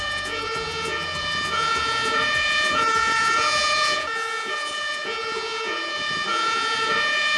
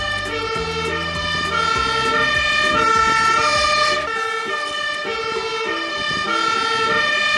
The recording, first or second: second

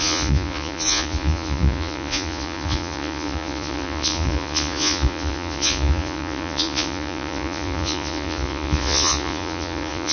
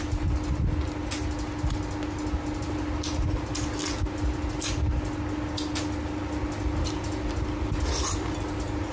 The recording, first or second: second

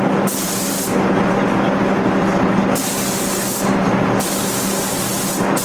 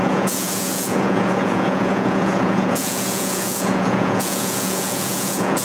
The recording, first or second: first